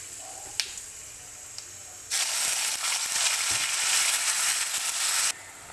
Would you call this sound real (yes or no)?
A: yes